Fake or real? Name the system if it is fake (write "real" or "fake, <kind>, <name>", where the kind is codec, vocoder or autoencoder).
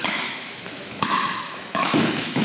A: fake, autoencoder, DAC-VAE